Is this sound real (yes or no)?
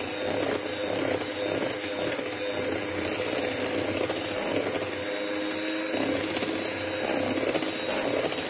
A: yes